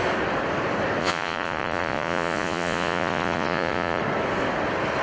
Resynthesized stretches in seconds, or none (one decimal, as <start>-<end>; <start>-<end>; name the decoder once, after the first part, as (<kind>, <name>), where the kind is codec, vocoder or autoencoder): 1.0-4.0 (vocoder, Vocos)